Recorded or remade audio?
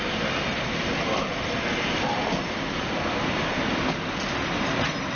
recorded